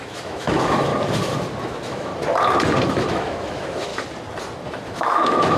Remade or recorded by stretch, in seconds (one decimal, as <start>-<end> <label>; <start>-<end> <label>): 0.0-0.9 remade; 0.9-1.6 recorded; 1.6-2.1 remade; 2.1-3.0 recorded; 3.0-3.9 remade; 3.9-4.7 recorded; 4.7-5.6 remade